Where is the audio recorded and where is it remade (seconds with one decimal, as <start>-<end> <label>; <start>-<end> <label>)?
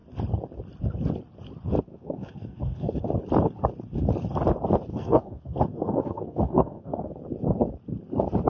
0.0-1.9 recorded; 1.9-3.0 remade; 3.0-4.9 recorded; 4.9-7.1 remade; 7.1-8.5 recorded